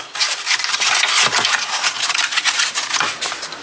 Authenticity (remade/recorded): recorded